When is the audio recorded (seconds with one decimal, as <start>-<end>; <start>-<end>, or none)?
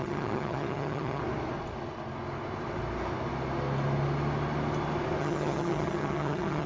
1.2-5.2